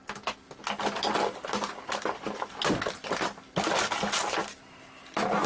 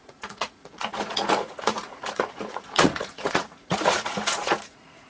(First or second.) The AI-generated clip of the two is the second